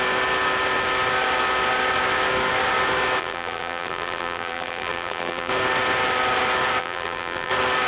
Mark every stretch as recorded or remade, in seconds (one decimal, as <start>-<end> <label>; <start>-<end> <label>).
0.0-3.2 recorded; 3.2-5.5 remade; 5.5-6.8 recorded; 6.8-7.5 remade; 7.5-7.9 recorded